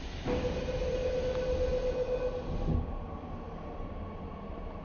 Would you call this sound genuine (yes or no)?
yes